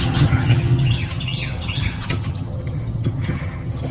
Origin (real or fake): fake